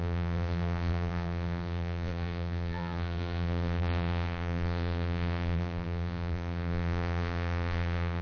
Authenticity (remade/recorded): remade